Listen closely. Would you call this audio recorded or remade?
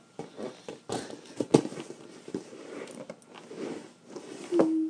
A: recorded